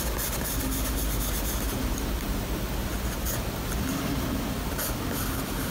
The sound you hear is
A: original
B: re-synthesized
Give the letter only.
A